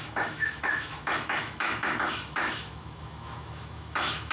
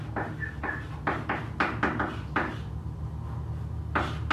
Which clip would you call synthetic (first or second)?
first